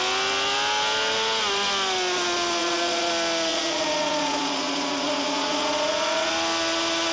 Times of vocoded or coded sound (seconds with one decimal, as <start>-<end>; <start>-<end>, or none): 2.6-3.1; 3.5-6.3